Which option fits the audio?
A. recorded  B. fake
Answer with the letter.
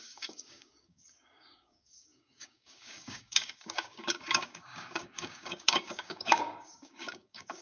B